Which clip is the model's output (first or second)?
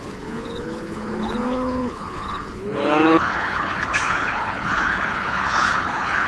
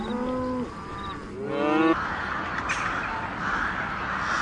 first